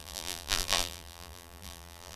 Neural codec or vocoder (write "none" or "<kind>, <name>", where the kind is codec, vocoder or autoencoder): vocoder, BigVGAN v2